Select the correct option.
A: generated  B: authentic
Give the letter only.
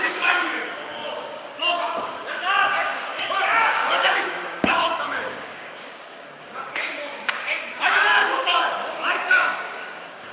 A